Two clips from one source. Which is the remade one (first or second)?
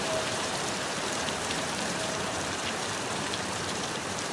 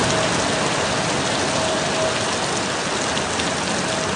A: first